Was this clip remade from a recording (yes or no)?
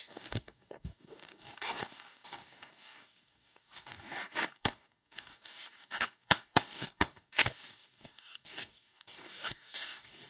yes